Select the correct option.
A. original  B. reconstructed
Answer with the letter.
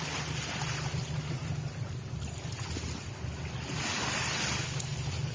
A